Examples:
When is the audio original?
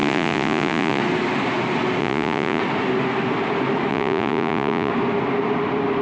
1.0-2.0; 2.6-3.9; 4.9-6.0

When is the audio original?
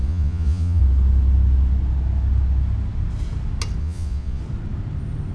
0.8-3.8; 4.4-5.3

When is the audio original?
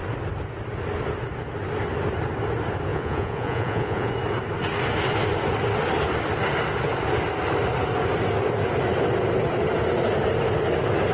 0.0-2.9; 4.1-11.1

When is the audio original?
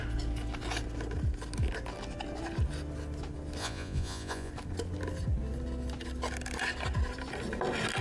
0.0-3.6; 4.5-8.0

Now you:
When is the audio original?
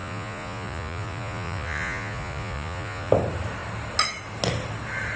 3.1-5.2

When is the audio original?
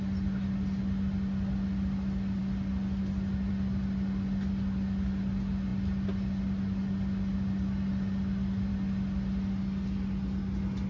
0.0-10.9